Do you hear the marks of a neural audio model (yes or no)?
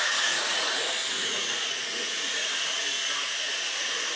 yes